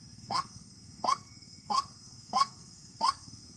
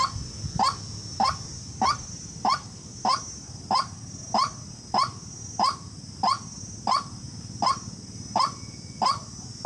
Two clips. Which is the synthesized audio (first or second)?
first